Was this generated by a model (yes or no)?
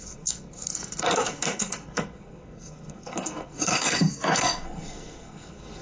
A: yes